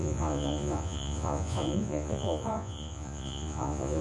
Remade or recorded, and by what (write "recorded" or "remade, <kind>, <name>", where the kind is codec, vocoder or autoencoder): remade, vocoder, Vocos